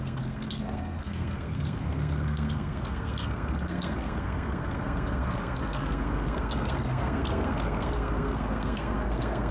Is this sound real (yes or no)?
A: no